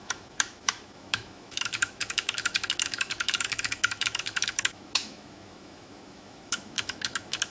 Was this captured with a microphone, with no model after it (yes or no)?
no